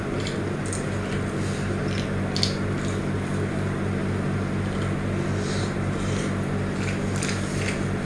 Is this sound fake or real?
real